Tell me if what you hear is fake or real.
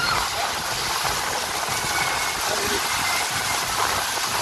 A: real